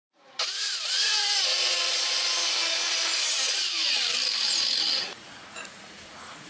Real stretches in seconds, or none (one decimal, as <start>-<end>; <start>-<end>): 1.1-5.0